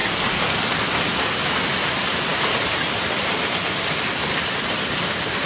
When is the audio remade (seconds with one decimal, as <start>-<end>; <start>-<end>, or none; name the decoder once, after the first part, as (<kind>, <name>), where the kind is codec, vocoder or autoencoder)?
0.9-5.5 (vocoder, BigVGAN v2)